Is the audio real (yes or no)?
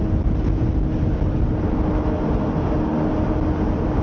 yes